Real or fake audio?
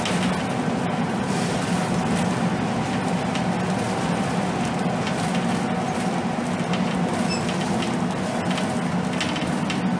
real